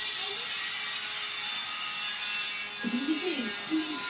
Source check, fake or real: real